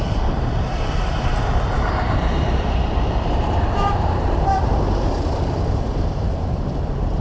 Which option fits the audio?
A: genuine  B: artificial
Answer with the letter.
B